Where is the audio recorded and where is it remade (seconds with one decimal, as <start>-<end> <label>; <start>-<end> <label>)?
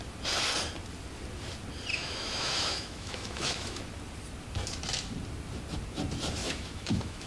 0.0-1.9 recorded; 1.9-3.8 remade; 3.8-6.4 recorded; 6.4-7.3 remade